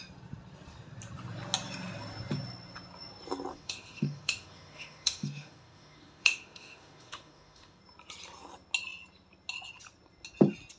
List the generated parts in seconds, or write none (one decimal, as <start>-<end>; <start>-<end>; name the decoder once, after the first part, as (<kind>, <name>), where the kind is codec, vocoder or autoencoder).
3.5-7.8 (autoencoder, DAC-VAE)